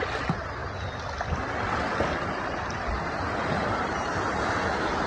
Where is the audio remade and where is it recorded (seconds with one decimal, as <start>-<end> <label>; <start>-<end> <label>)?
0.0-3.6 recorded; 3.6-4.3 remade; 4.3-5.1 recorded